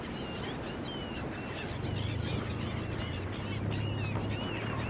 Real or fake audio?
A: real